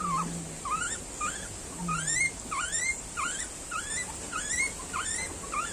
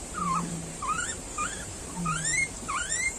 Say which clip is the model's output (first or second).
second